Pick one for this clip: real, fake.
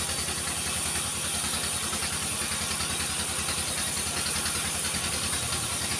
real